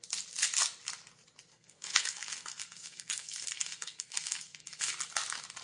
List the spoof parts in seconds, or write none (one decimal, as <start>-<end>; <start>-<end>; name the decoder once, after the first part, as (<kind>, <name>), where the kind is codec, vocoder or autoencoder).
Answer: 1.5-4.9 (codec, SNAC)